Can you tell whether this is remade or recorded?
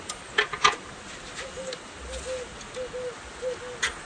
recorded